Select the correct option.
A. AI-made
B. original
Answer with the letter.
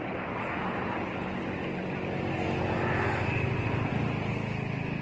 B